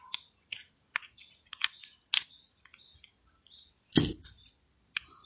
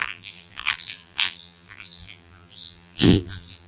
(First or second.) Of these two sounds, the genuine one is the first